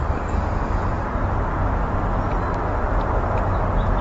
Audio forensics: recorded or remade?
recorded